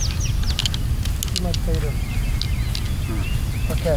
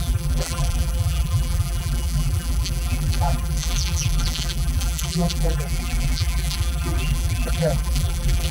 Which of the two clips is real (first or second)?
first